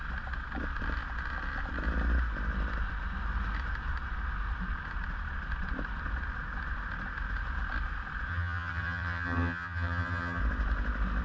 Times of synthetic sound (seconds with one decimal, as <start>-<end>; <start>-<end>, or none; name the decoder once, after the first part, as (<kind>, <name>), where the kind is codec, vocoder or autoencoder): 8.3-10.4 (vocoder, HiFi-GAN)